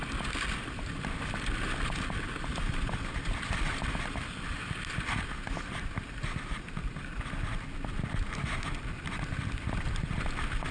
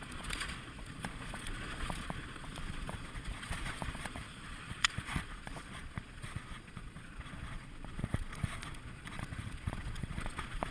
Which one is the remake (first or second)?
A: second